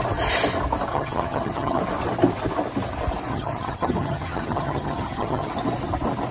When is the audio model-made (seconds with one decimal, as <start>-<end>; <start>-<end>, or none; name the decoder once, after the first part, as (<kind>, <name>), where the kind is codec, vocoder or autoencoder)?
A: 0.9-1.8 (vocoder, HiFi-GAN); 3.3-5.5